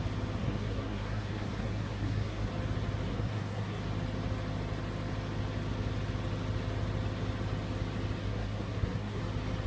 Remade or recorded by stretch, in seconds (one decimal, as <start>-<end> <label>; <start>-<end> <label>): 0.0-0.4 recorded; 0.4-2.5 remade; 2.5-3.1 recorded; 3.1-3.8 remade; 3.8-8.2 recorded; 8.2-9.2 remade; 9.2-9.7 recorded